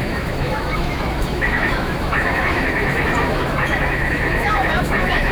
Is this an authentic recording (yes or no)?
no